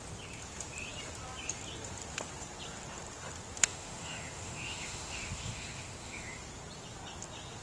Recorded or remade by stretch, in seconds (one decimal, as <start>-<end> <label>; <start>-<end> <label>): 0.0-3.6 recorded; 3.6-6.4 remade; 6.4-7.6 recorded